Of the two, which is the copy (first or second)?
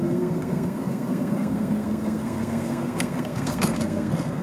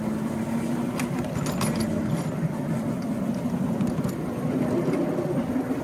first